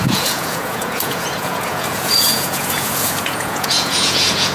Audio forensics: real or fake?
fake